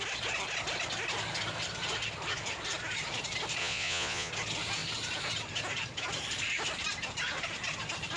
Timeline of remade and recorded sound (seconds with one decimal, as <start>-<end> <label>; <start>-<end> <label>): 0.0-3.6 recorded; 3.6-4.3 remade; 4.3-8.2 recorded